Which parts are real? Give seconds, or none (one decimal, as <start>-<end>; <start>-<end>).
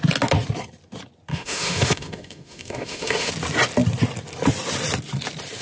0.0-1.3; 3.3-5.6